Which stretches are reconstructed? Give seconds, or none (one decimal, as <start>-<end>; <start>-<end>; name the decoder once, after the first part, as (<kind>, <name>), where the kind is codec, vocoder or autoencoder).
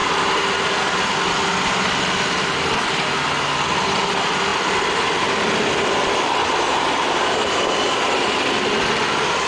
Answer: 6.7-7.6 (vocoder, BigVGAN v2)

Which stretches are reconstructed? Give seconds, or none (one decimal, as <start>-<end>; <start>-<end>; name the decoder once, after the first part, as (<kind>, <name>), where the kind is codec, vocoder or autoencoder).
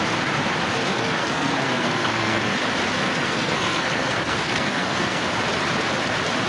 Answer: 0.9-2.6 (codec, SNAC); 3.0-5.2